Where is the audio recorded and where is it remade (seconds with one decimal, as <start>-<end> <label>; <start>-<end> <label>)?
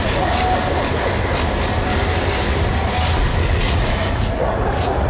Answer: 0.0-0.4 remade; 0.4-3.5 recorded; 3.5-5.1 remade